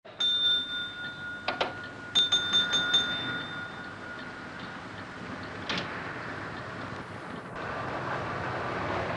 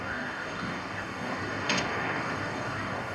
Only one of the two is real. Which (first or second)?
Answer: first